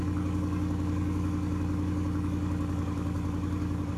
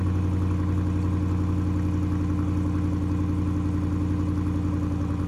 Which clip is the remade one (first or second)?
first